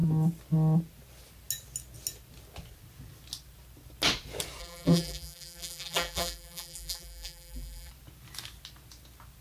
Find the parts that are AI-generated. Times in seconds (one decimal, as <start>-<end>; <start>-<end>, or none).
4.6-7.9